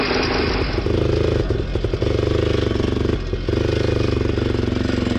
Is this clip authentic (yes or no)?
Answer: yes